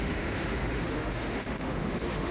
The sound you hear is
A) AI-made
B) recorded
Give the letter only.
A